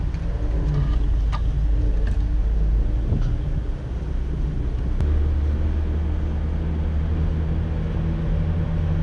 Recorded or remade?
recorded